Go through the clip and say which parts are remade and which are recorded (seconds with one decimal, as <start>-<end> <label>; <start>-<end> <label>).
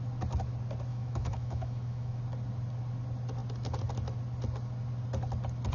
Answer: 0.0-0.9 recorded; 0.9-2.2 remade; 2.2-5.7 recorded